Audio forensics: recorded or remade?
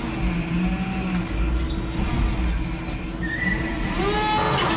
recorded